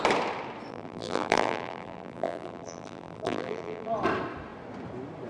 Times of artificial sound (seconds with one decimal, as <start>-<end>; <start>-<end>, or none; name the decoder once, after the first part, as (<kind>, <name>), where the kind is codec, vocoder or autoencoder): 0.7-3.9 (vocoder, BigVGAN v2)